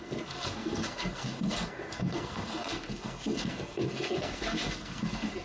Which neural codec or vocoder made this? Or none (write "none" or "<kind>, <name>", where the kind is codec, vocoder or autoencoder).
codec, SNAC